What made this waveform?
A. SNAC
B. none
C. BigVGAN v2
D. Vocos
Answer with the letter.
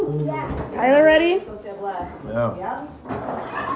B